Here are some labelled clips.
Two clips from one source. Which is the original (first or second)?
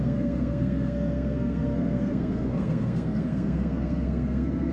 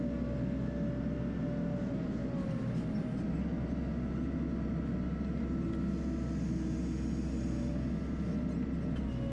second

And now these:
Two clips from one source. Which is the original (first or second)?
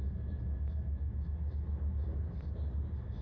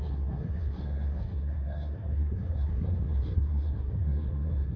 first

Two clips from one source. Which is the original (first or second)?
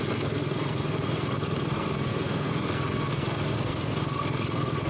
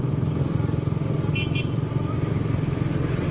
second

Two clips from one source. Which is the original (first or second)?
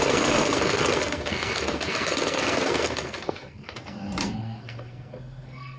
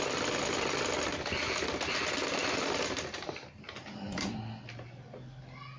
second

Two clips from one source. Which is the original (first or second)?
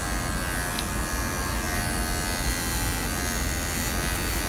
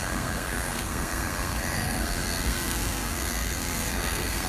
first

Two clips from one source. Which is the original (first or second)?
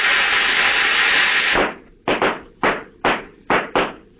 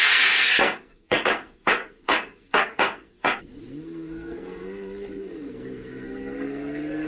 first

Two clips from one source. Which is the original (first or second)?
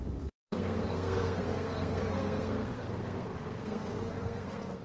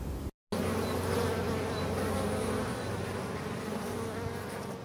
second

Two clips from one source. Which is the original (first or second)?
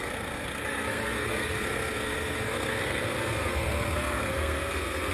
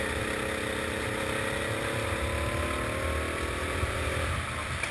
second